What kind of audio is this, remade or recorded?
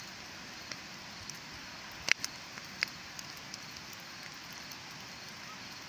recorded